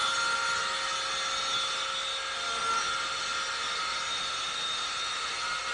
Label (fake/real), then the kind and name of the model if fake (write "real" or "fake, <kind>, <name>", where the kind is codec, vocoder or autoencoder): real